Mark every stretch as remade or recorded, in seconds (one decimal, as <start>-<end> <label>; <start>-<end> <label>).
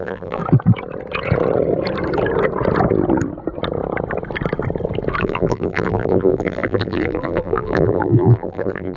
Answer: 0.0-0.4 remade; 0.4-5.2 recorded; 5.2-9.0 remade